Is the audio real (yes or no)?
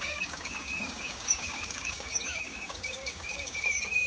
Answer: no